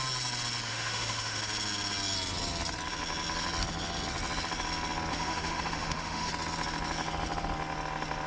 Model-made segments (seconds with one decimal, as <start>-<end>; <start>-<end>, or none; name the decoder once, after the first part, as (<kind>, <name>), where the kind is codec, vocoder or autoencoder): 0.7-1.4 (autoencoder, DAC-VAE); 5.1-6.3